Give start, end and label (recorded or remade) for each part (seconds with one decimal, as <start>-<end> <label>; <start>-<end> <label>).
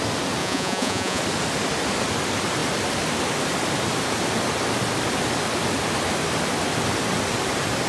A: 0.0-0.4 recorded; 0.4-1.2 remade; 1.2-7.9 recorded